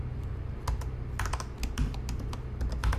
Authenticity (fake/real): real